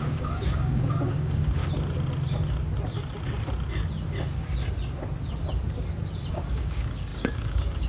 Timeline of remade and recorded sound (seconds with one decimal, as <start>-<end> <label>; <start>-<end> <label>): 0.0-1.6 remade; 1.6-6.3 recorded; 6.3-7.9 remade